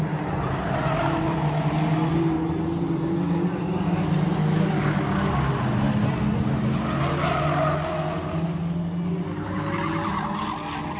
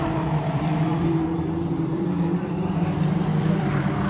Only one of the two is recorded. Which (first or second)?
first